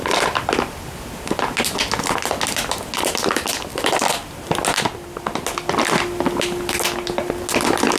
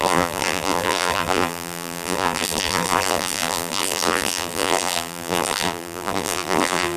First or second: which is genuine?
first